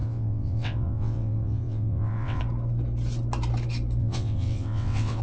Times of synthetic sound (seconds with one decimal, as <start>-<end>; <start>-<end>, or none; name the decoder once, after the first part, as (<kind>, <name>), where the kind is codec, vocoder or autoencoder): 0.0-2.4 (vocoder, WaveNeXt); 4.0-5.2